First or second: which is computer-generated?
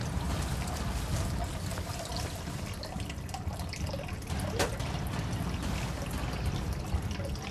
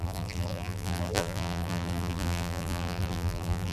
second